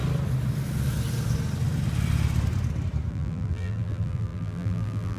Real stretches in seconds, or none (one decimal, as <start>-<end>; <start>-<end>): 0.0-3.1